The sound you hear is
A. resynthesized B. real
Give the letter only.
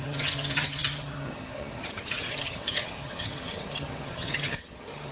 A